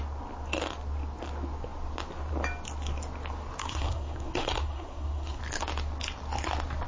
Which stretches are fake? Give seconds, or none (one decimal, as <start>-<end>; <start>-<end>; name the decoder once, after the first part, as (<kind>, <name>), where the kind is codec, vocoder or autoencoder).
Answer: 3.6-5.4 (codec, SNAC)

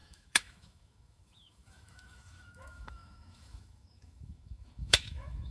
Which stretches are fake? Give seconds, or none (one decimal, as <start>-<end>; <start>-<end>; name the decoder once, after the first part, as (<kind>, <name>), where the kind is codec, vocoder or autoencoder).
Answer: 0.0-5.5 (autoencoder, DAC-VAE)

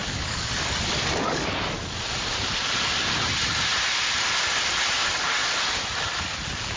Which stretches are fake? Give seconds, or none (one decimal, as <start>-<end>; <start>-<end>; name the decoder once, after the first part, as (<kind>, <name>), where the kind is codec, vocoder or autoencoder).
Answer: 0.0-1.5 (codec, DAC)

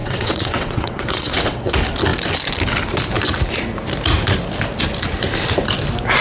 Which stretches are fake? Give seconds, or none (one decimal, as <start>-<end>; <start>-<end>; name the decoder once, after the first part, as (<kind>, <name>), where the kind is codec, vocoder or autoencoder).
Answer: 0.0-1.7 (vocoder, WaveNeXt)

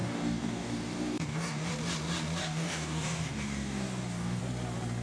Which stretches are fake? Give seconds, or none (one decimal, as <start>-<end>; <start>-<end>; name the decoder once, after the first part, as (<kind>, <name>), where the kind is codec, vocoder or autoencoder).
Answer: 0.0-1.7 (codec, DAC); 2.4-4.4